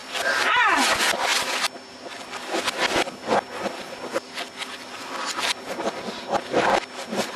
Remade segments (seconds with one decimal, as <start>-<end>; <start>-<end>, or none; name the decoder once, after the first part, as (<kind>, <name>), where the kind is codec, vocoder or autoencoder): none